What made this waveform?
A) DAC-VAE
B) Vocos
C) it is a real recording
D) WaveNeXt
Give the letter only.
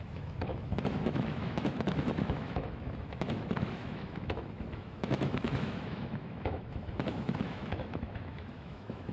A